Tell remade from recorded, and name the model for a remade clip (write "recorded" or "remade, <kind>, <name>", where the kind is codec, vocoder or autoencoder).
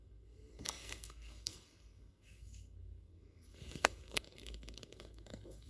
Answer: remade, codec, SNAC